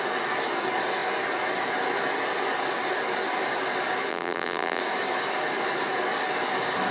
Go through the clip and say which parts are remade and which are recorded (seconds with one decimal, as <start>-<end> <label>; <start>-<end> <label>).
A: 0.0-4.1 recorded; 4.1-4.8 remade; 4.8-6.9 recorded